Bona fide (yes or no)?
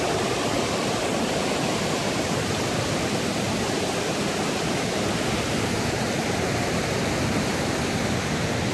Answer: yes